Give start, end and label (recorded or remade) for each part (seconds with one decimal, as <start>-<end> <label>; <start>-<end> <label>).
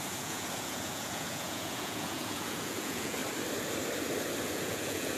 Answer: 0.0-3.2 remade; 3.2-4.4 recorded; 4.4-5.2 remade